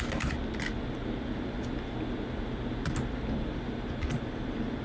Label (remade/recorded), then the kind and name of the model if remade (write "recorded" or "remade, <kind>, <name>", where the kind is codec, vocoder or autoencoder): recorded